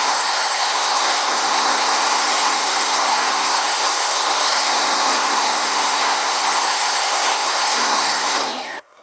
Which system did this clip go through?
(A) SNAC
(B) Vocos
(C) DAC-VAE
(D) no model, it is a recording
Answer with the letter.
A